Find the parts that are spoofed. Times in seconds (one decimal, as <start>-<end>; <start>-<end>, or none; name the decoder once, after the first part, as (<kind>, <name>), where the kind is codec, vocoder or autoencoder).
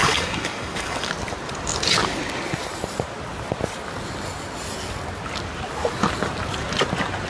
0.0-1.1 (codec, DAC)